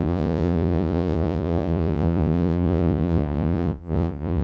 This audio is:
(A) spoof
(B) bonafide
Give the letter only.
A